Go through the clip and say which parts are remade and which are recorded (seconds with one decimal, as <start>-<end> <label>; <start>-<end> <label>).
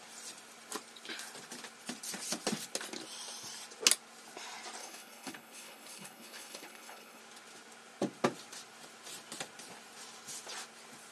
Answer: 0.0-4.8 recorded; 4.8-7.2 remade; 7.2-11.1 recorded